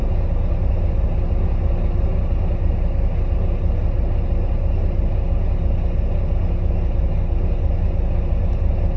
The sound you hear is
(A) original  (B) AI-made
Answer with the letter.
A